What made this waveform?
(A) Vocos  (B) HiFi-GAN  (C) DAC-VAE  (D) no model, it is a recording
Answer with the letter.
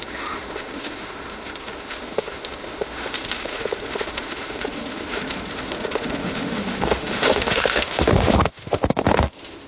C